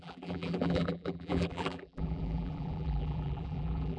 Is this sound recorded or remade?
remade